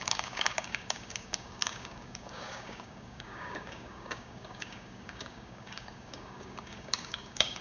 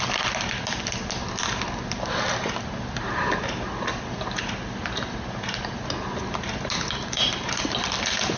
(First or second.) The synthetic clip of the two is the first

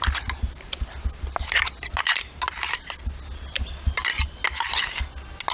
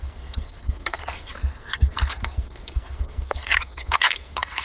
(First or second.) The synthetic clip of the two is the second